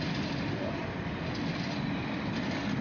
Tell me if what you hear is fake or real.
real